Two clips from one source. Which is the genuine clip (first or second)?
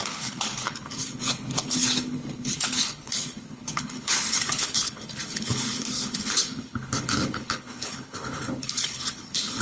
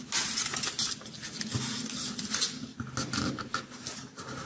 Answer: second